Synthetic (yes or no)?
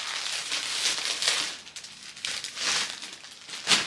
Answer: no